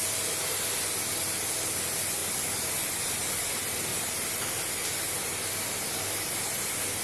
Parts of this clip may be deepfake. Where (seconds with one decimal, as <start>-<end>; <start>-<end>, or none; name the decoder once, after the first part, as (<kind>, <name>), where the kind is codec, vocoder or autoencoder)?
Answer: none